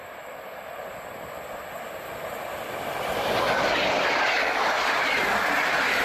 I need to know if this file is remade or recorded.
recorded